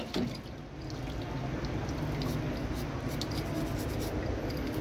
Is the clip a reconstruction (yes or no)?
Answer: no